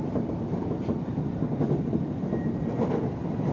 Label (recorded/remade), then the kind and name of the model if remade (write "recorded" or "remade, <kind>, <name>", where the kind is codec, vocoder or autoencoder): recorded